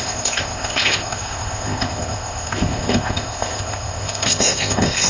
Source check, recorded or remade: remade